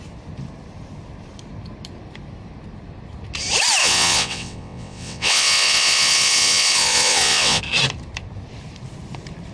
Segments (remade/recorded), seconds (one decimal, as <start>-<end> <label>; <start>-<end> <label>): 0.0-3.8 recorded; 3.8-7.6 remade; 7.6-9.5 recorded